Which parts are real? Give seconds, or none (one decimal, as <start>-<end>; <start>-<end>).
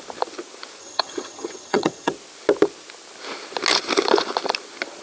0.0-0.8; 2.1-5.0